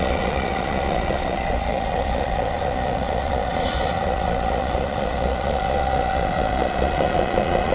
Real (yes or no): no